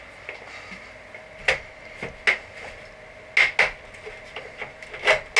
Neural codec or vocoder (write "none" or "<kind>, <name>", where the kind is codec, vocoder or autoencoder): none